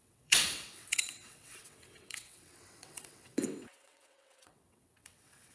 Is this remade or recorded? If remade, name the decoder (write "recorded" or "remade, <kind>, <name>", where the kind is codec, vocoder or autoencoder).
remade, vocoder, WaveNeXt